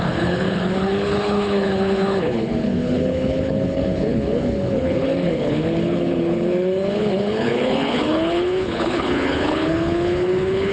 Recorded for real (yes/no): no